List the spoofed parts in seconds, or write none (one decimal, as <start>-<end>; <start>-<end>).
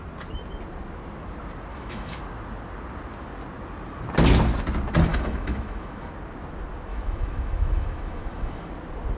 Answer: 1.7-2.2; 5.1-6.1; 6.9-8.7